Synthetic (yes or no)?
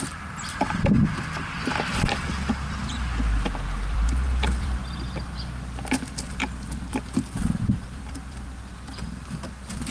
yes